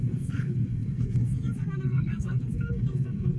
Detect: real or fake fake